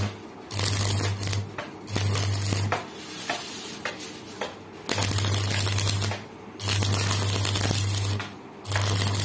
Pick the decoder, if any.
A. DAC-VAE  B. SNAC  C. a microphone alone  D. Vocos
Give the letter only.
C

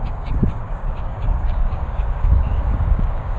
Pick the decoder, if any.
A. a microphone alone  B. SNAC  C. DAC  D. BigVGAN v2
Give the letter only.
C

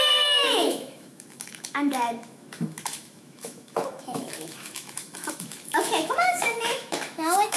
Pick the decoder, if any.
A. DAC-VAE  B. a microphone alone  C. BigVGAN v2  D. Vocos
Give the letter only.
A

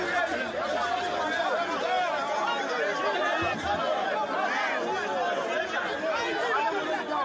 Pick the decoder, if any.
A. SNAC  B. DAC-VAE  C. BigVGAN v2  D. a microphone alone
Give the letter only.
D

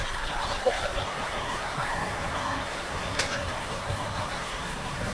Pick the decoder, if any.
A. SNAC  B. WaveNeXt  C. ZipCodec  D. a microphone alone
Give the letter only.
A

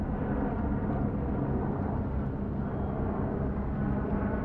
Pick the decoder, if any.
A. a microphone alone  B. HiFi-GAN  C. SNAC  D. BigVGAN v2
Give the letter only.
A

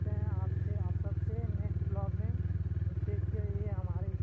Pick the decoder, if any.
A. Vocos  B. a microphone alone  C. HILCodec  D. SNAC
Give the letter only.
B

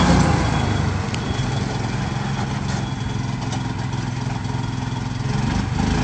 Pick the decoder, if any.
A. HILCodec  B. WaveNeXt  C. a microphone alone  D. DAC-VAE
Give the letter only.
C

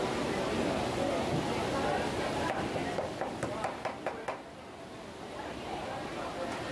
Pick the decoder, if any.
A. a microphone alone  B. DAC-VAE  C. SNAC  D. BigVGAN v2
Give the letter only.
A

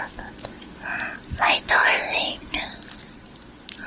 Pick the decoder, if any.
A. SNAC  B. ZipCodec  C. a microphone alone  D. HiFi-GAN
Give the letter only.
C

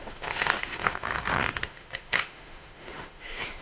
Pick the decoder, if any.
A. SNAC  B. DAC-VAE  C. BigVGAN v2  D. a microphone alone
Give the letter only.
B